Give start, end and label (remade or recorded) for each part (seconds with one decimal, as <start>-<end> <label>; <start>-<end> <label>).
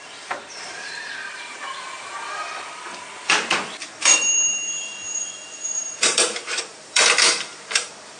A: 0.0-8.2 remade